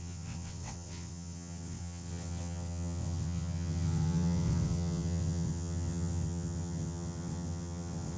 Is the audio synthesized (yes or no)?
yes